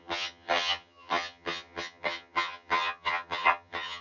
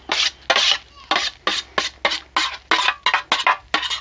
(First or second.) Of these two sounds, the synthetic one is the first